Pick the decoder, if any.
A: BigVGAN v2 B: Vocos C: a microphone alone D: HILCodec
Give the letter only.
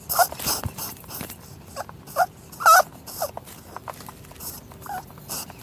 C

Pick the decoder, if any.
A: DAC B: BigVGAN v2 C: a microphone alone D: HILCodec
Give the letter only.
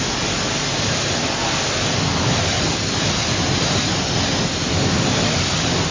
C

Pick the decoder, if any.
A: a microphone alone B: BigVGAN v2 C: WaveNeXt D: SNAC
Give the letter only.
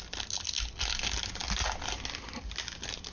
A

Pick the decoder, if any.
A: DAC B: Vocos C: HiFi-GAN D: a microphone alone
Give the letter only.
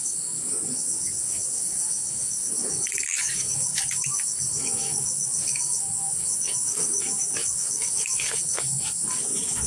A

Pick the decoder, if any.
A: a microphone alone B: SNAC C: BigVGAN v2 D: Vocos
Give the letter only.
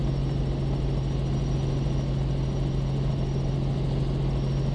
A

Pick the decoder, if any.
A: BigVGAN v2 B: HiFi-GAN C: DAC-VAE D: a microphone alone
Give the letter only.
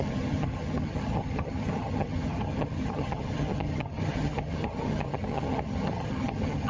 B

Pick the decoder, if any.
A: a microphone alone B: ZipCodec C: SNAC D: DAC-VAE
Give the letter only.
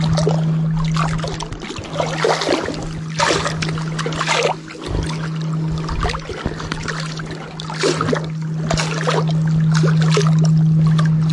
A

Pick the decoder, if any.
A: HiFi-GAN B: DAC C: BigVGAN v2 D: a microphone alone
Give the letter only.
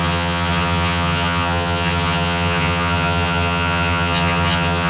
A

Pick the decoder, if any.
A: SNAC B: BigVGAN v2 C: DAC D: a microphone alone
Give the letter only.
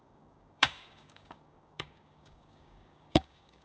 C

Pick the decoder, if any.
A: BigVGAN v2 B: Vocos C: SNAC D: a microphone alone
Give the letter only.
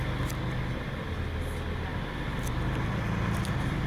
D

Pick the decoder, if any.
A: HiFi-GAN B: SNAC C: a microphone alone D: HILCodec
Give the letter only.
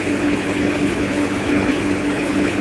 D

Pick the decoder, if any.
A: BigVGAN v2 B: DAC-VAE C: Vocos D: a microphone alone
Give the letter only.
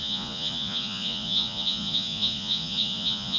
C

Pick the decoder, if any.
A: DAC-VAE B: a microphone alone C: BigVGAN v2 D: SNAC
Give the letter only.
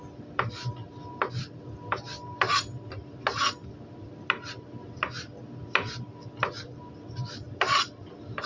B